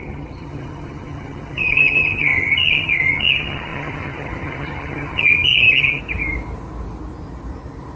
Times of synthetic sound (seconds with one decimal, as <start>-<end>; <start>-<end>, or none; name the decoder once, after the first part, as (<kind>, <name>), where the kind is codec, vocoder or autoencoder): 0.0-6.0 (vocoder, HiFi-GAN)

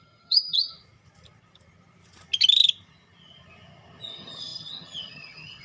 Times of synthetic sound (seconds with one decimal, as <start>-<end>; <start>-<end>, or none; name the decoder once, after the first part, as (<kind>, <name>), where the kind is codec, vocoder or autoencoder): 0.0-0.7 (vocoder, HiFi-GAN); 4.1-5.6

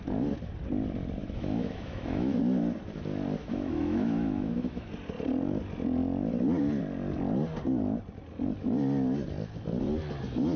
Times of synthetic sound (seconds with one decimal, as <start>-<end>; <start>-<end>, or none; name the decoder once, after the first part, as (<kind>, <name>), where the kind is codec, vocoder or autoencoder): 1.2-2.4 (autoencoder, DAC-VAE); 3.4-4.9

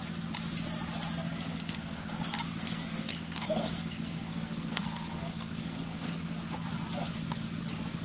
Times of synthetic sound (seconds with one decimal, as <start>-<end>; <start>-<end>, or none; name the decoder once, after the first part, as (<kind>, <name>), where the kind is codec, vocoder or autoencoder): 1.5-6.3 (codec, SNAC)